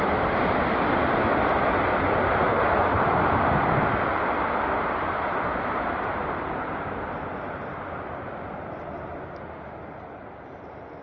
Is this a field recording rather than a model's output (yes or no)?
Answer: yes